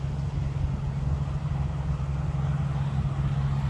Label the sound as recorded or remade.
recorded